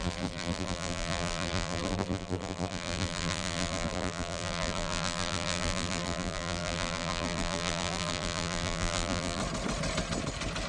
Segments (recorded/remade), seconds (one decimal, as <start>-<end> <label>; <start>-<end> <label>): 0.0-9.4 remade; 9.4-10.7 recorded